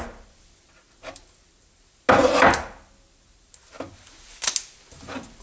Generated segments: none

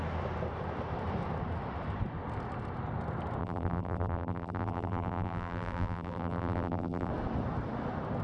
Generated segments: 3.4-7.1 (vocoder, BigVGAN v2)

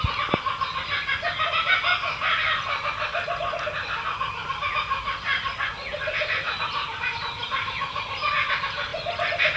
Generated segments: 4.4-7.0 (vocoder, BigVGAN v2)

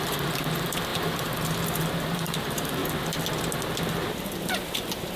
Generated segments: 0.0-2.8 (vocoder, BigVGAN v2); 4.4-5.2

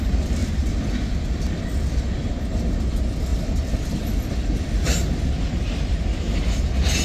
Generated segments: 3.3-4.0 (vocoder, BigVGAN v2)

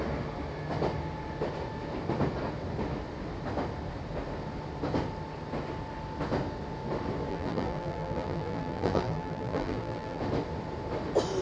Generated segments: 7.3-10.2 (vocoder, BigVGAN v2)